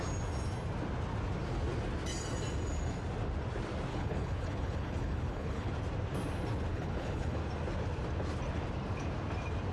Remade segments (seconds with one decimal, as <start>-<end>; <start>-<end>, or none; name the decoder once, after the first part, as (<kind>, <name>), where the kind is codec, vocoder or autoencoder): 3.9-5.7 (codec, HILCodec); 6.7-7.4